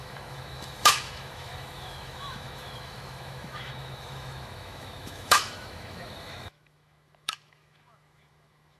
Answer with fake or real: fake